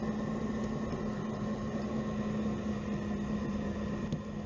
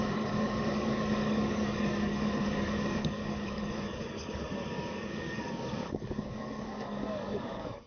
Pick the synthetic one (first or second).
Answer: second